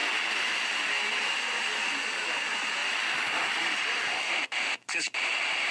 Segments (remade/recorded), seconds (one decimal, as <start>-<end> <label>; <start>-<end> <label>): 0.0-2.8 recorded; 2.8-5.7 remade